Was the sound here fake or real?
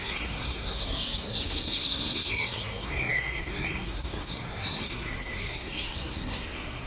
fake